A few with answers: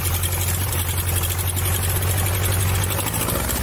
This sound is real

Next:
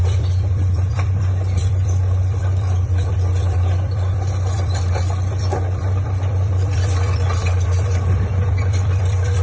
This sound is fake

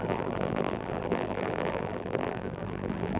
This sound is fake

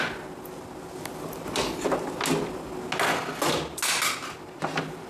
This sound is real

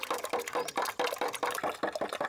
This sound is real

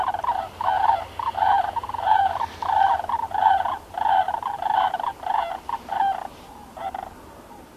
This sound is fake